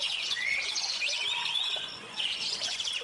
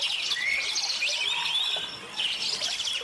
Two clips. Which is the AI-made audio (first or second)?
first